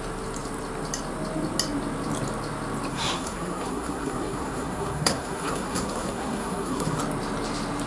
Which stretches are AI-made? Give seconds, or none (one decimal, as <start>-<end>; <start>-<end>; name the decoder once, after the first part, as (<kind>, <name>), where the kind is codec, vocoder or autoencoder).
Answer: 2.9-7.0 (codec, SNAC)